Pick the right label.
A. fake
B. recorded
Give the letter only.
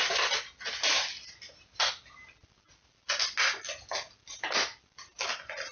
B